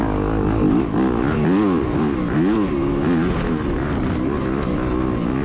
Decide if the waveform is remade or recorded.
recorded